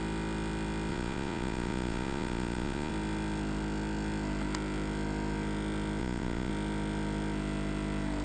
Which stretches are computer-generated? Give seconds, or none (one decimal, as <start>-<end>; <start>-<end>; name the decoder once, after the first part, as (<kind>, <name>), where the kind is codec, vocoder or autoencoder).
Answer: 0.9-2.9 (vocoder, Vocos); 6.0-6.5